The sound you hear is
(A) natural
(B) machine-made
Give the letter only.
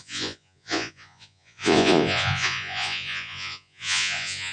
B